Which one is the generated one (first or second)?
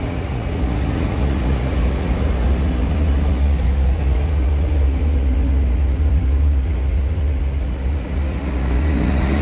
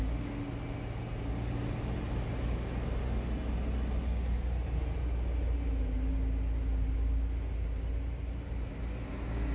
first